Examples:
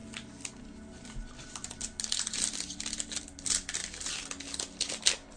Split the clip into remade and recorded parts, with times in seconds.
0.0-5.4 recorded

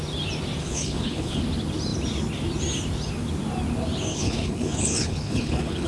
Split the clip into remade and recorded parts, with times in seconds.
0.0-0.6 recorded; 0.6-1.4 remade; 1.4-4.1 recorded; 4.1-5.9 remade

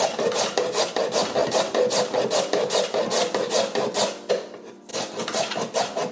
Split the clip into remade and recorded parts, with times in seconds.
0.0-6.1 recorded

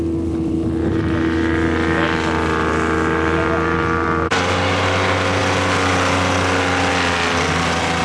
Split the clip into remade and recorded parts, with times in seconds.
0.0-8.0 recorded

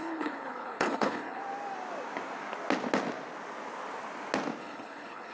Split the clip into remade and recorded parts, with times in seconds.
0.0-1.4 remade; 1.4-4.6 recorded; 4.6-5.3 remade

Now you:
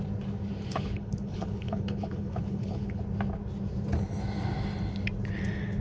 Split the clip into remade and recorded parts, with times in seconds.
0.0-0.7 recorded; 0.7-3.0 remade; 3.0-5.8 recorded